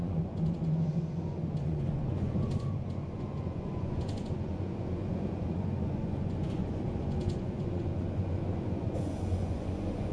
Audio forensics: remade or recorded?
remade